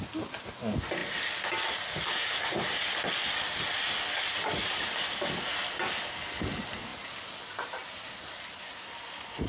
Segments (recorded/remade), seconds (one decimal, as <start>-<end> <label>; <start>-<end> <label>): 0.0-9.5 recorded